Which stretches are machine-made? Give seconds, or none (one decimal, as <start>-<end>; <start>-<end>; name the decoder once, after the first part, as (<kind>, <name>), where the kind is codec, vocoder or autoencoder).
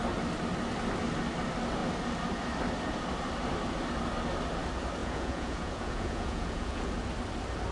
5.0-6.9 (vocoder, Vocos)